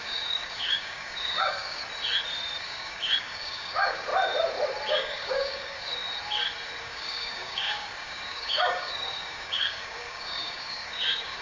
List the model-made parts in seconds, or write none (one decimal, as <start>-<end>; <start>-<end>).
0.0-1.8; 2.6-4.1; 4.9-6.0; 6.8-11.4